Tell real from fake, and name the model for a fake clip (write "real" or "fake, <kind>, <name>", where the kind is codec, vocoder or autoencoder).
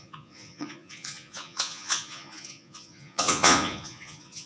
fake, vocoder, Vocos